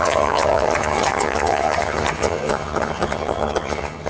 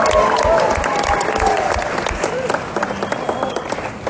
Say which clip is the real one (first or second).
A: second